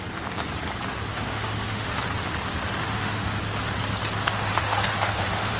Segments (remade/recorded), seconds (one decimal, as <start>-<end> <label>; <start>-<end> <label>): 0.0-1.1 recorded; 1.1-2.0 remade; 2.0-2.8 recorded; 2.8-3.4 remade; 3.4-4.2 recorded; 4.2-5.6 remade